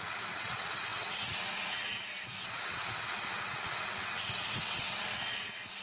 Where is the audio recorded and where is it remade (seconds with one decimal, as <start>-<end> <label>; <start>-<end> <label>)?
0.0-5.8 remade